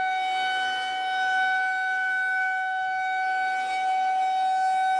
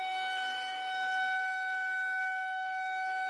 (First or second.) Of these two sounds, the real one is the first